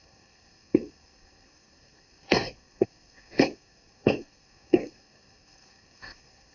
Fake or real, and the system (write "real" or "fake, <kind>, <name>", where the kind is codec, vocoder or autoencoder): fake, codec, SNAC